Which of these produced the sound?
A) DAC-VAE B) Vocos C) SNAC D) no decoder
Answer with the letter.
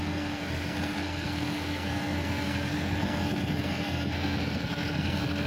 C